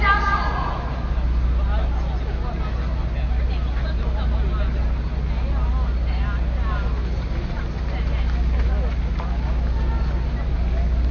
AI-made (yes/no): no